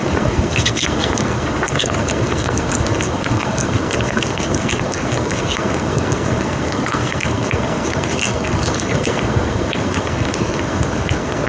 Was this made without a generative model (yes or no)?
no